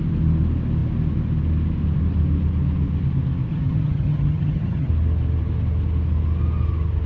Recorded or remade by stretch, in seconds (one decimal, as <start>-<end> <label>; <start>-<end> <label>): 0.0-3.5 recorded; 3.5-4.9 remade; 4.9-7.1 recorded